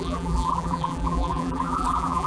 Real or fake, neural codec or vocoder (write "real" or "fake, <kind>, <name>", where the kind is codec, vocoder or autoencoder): fake, vocoder, BigVGAN v2